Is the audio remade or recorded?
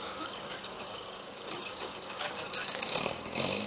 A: remade